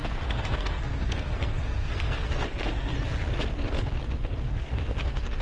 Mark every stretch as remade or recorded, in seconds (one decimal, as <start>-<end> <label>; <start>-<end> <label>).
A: 0.0-2.9 remade; 2.9-4.0 recorded; 4.0-5.4 remade